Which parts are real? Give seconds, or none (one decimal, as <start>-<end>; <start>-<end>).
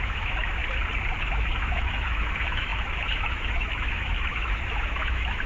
0.6-1.2